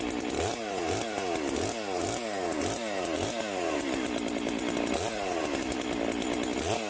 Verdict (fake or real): real